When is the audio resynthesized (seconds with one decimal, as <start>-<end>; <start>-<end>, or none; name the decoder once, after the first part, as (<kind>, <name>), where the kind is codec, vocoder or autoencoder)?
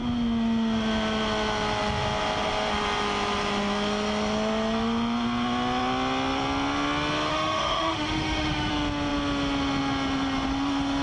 7.3-8.7 (autoencoder, DAC-VAE)